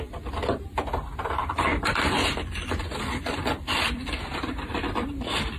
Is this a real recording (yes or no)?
no